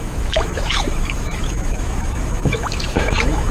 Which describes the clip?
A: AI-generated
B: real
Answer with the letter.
A